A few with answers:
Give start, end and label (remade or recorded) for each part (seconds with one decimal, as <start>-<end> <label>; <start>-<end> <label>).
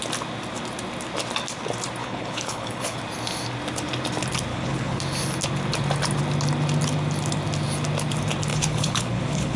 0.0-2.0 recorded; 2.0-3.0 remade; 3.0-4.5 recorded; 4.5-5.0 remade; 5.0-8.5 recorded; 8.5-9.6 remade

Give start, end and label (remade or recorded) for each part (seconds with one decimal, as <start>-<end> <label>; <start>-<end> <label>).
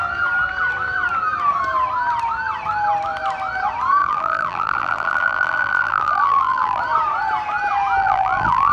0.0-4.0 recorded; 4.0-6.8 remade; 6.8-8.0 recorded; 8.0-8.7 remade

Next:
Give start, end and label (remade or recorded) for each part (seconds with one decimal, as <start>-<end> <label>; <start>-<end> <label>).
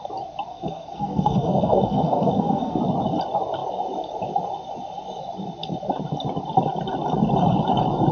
0.0-0.5 recorded; 0.5-2.8 remade; 2.8-8.1 recorded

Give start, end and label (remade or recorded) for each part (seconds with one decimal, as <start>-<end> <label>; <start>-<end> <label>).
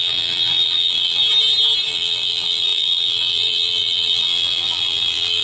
0.0-1.2 remade; 1.2-1.9 recorded; 1.9-5.4 remade